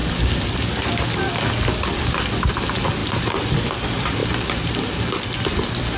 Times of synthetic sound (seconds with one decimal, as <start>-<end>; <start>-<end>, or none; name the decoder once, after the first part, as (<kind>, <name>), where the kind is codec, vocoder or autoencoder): 3.0-3.6 (vocoder, BigVGAN v2); 4.2-5.2